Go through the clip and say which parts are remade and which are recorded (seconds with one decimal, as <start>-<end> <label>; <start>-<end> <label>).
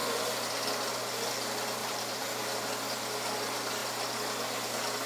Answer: 0.0-1.8 recorded; 1.8-2.4 remade; 2.4-5.1 recorded